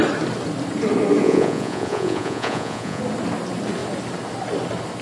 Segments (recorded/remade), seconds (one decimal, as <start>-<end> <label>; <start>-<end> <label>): 0.0-1.2 recorded; 1.2-3.0 remade; 3.0-5.0 recorded